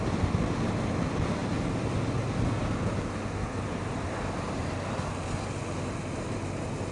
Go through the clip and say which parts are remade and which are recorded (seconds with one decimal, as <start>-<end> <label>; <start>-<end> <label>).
0.0-6.9 recorded